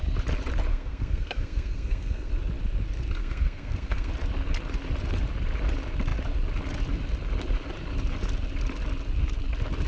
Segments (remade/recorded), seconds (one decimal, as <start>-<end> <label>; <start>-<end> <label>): 0.0-0.7 recorded; 0.7-2.3 remade; 2.3-3.2 recorded; 3.2-4.1 remade; 4.1-9.9 recorded

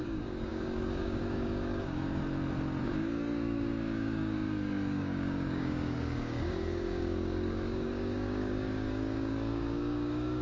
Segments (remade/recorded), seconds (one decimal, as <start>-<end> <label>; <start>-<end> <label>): 0.0-2.2 remade; 2.2-2.8 recorded; 2.8-10.4 remade

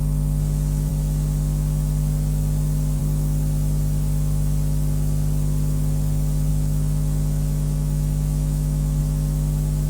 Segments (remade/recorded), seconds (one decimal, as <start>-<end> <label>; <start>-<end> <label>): 0.0-6.5 recorded; 6.5-9.0 remade; 9.0-9.9 recorded

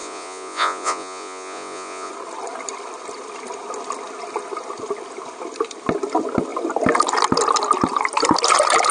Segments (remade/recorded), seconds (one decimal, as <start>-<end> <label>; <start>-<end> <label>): 0.0-2.1 remade; 2.1-8.9 recorded

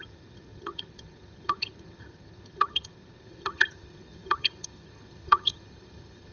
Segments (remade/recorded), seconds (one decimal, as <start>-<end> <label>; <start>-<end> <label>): 0.0-6.3 remade

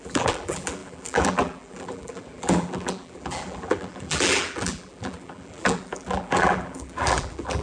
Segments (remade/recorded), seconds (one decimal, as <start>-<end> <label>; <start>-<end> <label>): 0.0-7.6 remade

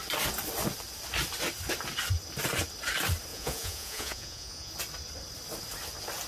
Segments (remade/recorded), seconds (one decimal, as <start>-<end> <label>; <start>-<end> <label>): 0.0-3.3 recorded; 3.3-4.7 remade; 4.7-6.3 recorded

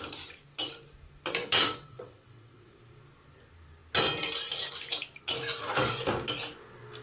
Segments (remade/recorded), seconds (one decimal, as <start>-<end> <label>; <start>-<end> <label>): 0.0-1.4 recorded; 1.4-2.8 remade; 2.8-7.0 recorded